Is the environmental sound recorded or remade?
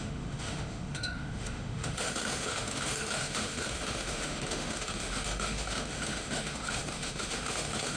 remade